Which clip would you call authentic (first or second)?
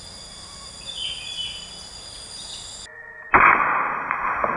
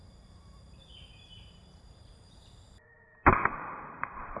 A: first